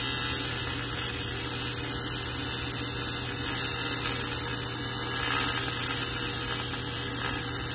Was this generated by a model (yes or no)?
no